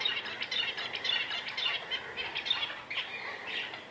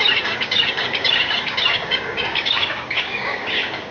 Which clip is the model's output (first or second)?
second